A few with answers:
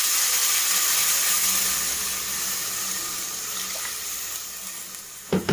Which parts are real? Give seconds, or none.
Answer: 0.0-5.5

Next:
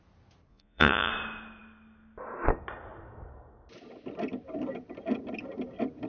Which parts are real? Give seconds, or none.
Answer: 0.0-0.5; 1.1-6.1

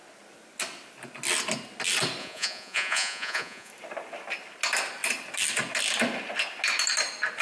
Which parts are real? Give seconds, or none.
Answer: 0.0-2.2; 3.7-7.4

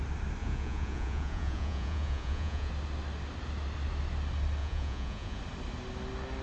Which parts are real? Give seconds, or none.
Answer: 0.0-0.4; 2.7-4.6; 5.4-6.4

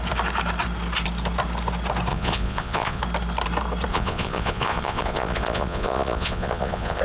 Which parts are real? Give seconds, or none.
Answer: 0.0-2.1; 3.0-3.9

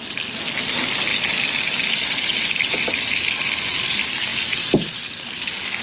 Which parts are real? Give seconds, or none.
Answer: 0.0-5.8

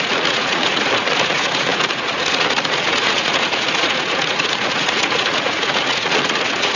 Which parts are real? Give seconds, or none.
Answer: none